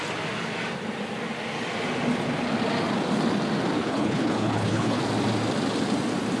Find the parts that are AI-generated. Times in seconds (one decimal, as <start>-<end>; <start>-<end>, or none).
3.8-5.0